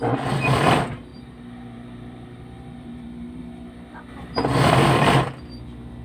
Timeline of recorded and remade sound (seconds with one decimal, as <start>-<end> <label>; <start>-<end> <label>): 0.0-1.1 recorded; 1.1-3.4 remade; 3.4-6.0 recorded

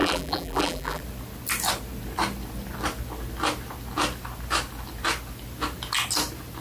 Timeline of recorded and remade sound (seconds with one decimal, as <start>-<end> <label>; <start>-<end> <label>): 0.0-1.0 remade; 1.0-6.6 recorded

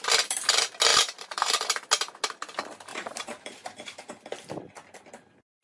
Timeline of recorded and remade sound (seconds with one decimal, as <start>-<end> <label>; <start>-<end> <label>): 0.0-0.9 recorded; 0.9-1.6 remade; 1.6-2.9 recorded; 2.9-4.2 remade; 4.2-5.6 recorded

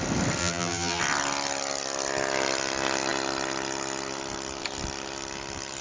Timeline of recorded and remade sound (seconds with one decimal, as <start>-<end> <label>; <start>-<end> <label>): 0.0-0.4 recorded; 0.4-1.0 remade; 1.0-5.8 recorded

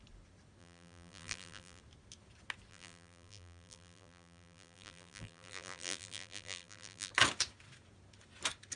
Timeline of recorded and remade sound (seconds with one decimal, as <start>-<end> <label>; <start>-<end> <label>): 0.0-0.6 recorded; 0.6-1.8 remade; 1.8-2.7 recorded; 2.7-7.1 remade; 7.1-8.8 recorded

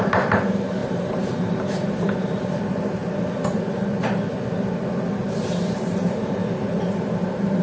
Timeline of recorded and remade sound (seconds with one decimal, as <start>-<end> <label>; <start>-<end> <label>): 0.0-3.0 remade; 3.0-5.3 recorded; 5.3-6.4 remade; 6.4-6.9 recorded; 6.9-7.6 remade